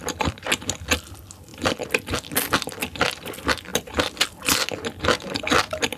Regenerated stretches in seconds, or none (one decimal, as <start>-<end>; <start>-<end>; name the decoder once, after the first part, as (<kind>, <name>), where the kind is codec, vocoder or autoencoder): none